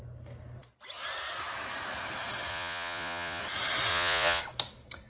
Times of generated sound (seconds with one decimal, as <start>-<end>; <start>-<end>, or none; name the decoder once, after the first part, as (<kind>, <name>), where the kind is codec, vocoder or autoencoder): 2.5-3.4 (vocoder, Vocos); 3.9-4.4